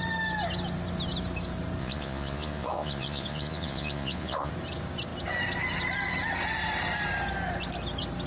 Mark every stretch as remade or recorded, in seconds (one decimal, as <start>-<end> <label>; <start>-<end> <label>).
0.0-1.8 recorded; 1.8-4.5 remade; 4.5-8.3 recorded